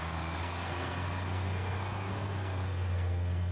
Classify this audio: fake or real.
fake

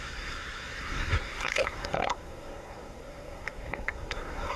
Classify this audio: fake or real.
fake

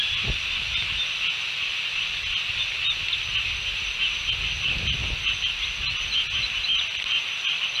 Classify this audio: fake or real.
real